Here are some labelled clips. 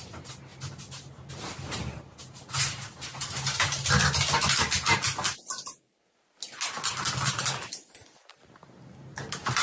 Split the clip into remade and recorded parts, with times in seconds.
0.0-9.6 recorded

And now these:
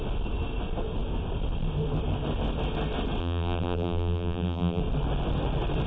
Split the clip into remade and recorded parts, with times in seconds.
0.0-3.2 recorded; 3.2-4.8 remade; 4.8-5.9 recorded

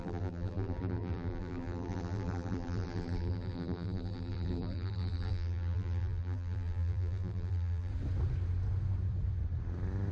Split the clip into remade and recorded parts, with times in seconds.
0.0-7.9 remade; 7.9-10.1 recorded

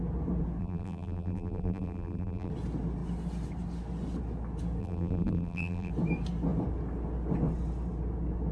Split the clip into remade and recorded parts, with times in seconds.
0.0-0.6 recorded; 0.6-2.5 remade; 2.5-4.8 recorded; 4.8-5.9 remade; 5.9-8.5 recorded

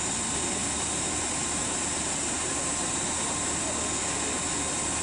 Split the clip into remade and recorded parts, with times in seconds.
0.0-0.6 recorded; 0.6-3.6 remade; 3.6-5.0 recorded